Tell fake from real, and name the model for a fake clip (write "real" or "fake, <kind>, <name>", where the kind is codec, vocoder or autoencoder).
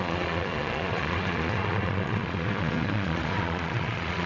fake, vocoder, Vocos